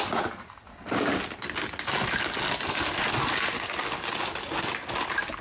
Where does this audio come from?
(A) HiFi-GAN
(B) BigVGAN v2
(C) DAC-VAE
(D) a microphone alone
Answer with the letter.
D